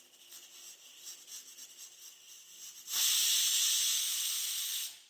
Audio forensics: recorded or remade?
recorded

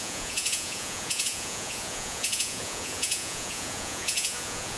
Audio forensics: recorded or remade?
remade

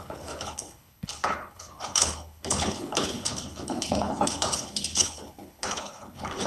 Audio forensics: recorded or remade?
remade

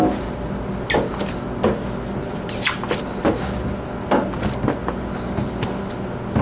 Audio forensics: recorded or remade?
recorded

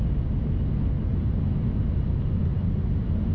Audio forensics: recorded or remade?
recorded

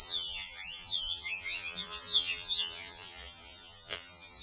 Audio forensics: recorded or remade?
remade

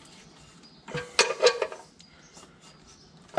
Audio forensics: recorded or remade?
recorded